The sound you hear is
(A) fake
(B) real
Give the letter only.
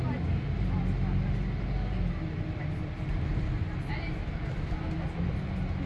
B